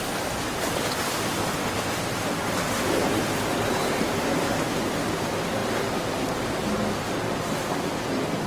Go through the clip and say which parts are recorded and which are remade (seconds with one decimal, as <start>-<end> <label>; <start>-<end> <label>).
0.0-0.5 recorded; 0.5-4.5 remade; 4.5-8.5 recorded